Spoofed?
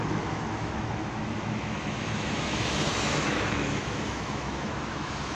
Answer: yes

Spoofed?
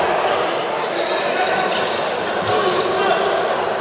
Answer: no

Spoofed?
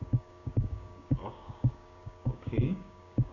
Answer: yes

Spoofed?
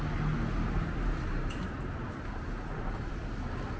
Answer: no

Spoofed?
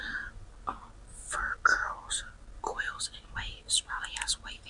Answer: no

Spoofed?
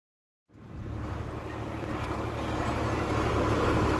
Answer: no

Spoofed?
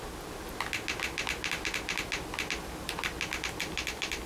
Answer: no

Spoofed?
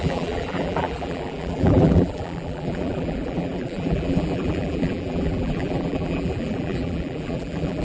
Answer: yes